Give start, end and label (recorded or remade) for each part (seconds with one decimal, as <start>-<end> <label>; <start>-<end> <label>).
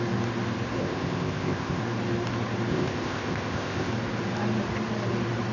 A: 0.0-0.8 recorded; 0.8-1.8 remade; 1.8-2.7 recorded; 2.7-3.9 remade; 3.9-5.5 recorded